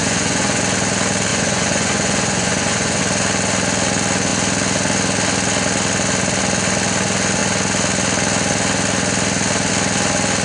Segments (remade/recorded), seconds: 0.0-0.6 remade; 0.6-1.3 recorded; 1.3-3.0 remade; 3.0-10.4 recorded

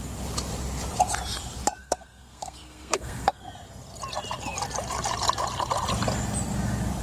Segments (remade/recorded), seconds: 0.0-1.8 recorded; 1.8-3.4 remade; 3.4-7.0 recorded

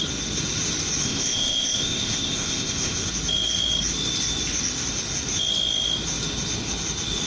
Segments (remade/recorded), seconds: 0.0-1.0 recorded; 1.0-3.1 remade; 3.1-7.3 recorded

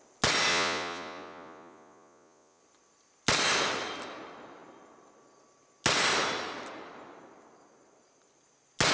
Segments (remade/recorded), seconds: 0.0-0.5 recorded; 0.5-2.6 remade; 2.6-8.9 recorded

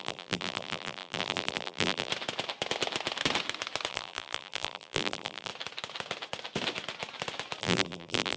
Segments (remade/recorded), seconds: 0.0-2.1 remade; 2.1-3.9 recorded; 3.9-5.5 remade; 5.5-7.6 recorded; 7.6-8.4 remade

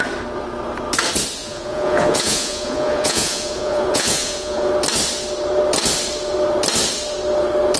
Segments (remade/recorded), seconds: 0.0-1.4 recorded; 1.4-4.7 remade; 4.7-7.8 recorded

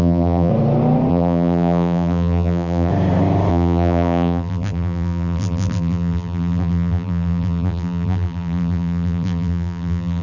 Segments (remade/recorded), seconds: 0.0-0.5 remade; 0.5-1.1 recorded; 1.1-2.9 remade; 2.9-3.5 recorded; 3.5-10.2 remade

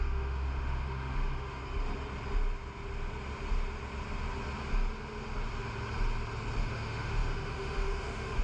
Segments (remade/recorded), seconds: 0.0-1.6 remade; 1.6-6.6 recorded; 6.6-8.4 remade